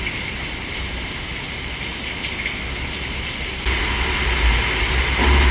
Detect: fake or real real